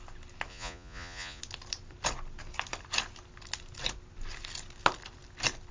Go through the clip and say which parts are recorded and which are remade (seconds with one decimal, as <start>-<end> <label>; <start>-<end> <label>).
0.0-0.5 recorded; 0.5-1.4 remade; 1.4-5.7 recorded